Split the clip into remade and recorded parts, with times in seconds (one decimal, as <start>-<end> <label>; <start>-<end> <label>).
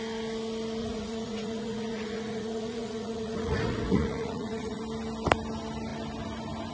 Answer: 0.0-0.8 recorded; 0.8-4.8 remade; 4.8-6.7 recorded